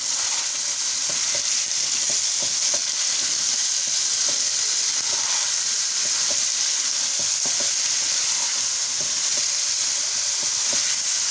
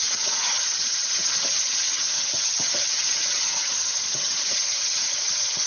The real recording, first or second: first